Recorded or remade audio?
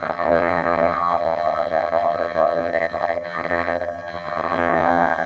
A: remade